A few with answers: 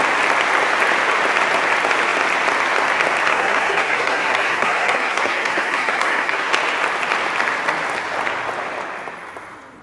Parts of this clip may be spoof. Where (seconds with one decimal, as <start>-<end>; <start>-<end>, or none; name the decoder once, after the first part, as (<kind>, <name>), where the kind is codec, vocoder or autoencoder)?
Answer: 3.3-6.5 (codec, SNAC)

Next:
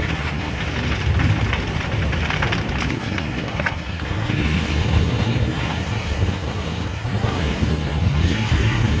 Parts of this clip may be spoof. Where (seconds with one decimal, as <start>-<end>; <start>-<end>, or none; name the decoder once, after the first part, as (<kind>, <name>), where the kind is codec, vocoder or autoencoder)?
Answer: 0.0-0.6 (codec, SNAC); 2.9-9.0

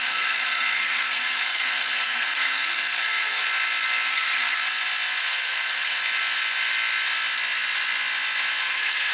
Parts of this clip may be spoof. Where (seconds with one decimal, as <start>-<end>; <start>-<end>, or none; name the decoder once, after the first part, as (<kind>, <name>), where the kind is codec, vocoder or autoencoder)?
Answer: 0.0-3.4 (codec, SNAC); 4.1-4.6; 5.2-6.0; 8.6-9.1